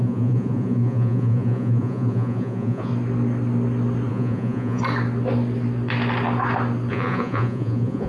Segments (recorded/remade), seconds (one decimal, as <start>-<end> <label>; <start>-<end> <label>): 0.0-2.9 remade; 2.9-4.1 recorded; 4.1-4.8 remade; 4.8-6.9 recorded; 6.9-8.1 remade

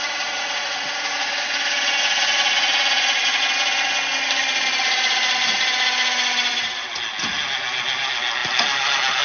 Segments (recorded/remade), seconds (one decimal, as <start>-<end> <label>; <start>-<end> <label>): 0.0-3.4 remade; 3.4-9.2 recorded